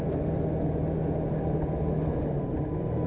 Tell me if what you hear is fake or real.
real